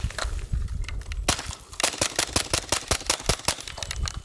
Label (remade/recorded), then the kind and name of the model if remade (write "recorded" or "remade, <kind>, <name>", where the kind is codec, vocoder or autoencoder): recorded